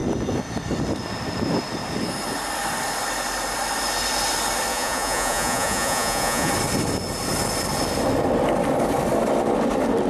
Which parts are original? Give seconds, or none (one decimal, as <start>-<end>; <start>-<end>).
0.0-4.7; 6.5-10.1